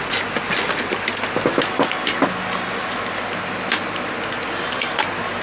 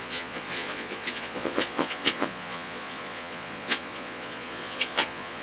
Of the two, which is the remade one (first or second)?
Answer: second